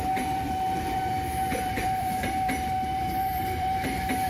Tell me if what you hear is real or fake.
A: fake